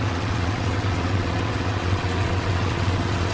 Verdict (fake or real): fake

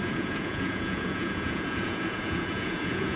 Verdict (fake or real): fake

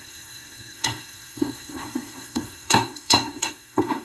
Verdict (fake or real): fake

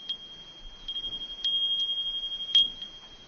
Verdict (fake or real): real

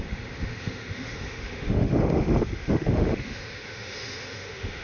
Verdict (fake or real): fake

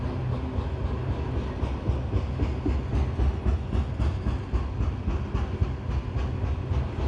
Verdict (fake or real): real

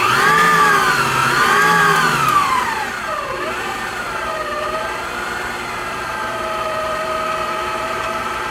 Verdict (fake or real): fake